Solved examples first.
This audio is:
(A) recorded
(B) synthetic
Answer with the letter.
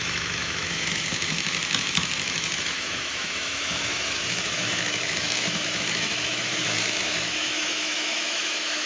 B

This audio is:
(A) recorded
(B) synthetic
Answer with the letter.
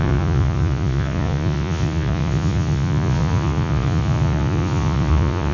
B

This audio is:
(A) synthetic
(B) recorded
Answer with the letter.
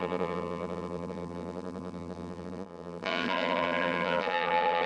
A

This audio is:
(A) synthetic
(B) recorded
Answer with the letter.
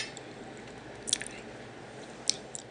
B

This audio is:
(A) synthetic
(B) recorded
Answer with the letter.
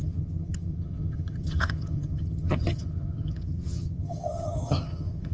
A